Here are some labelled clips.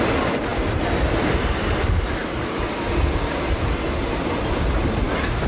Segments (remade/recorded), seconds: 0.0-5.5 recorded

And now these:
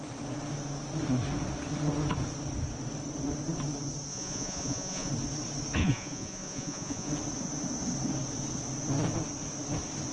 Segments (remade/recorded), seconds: 0.0-4.1 recorded; 4.1-5.1 remade; 5.1-5.8 recorded; 5.8-7.1 remade; 7.1-10.1 recorded

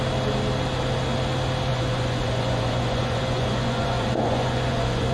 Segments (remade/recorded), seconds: 0.0-1.7 recorded; 1.7-5.1 remade

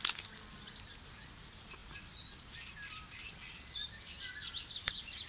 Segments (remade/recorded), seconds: 0.0-5.3 recorded